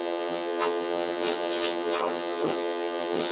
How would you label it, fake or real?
fake